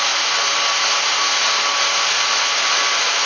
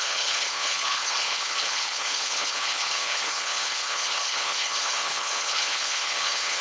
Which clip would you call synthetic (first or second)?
second